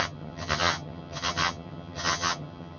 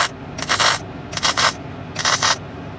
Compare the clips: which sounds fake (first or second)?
first